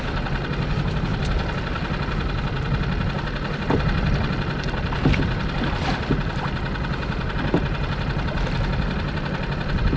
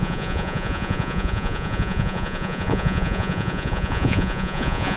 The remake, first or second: second